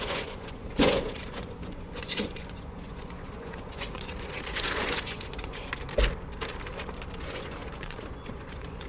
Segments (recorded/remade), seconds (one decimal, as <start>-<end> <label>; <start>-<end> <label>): 0.0-5.7 remade; 5.7-7.2 recorded; 7.2-8.9 remade